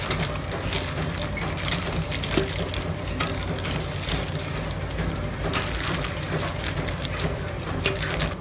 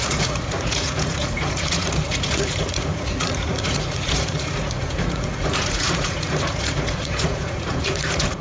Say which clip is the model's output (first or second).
second